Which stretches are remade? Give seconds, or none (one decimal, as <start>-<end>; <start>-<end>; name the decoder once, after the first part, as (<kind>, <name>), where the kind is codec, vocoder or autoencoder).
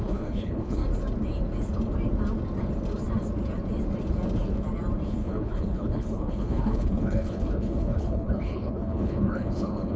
0.0-0.8 (codec, HILCodec); 5.1-10.0